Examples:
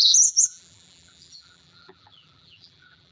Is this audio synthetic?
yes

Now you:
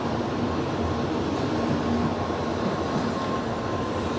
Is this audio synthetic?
no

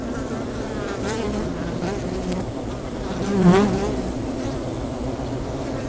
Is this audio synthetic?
yes